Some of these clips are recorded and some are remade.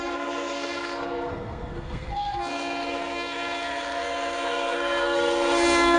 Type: remade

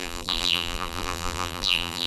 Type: remade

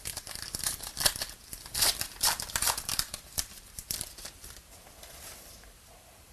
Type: remade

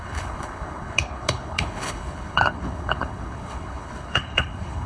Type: remade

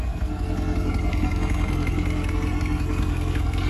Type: remade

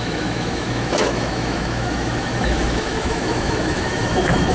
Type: remade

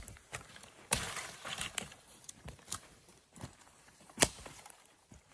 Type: remade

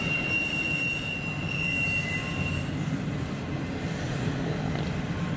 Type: recorded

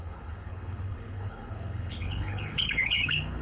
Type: remade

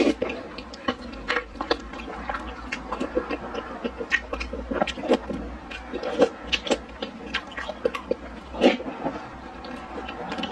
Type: recorded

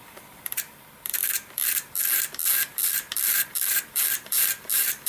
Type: remade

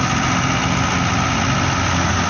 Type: recorded